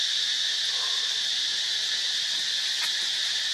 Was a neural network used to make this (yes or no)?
no